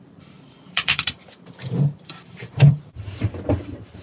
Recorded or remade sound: remade